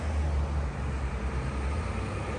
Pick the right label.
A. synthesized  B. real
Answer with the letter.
B